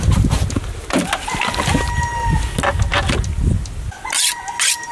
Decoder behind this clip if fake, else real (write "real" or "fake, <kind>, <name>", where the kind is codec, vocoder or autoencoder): real